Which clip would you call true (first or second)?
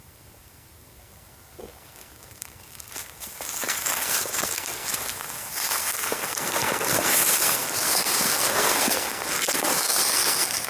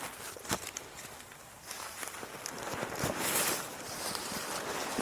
second